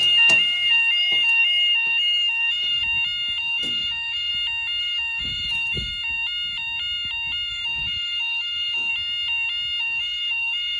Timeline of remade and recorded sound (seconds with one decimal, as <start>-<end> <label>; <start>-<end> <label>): 0.0-2.8 remade; 2.8-3.4 recorded; 3.4-4.3 remade; 4.3-4.8 recorded; 4.8-5.9 remade; 5.9-7.5 recorded; 7.5-8.9 remade; 8.9-9.8 recorded; 9.8-10.8 remade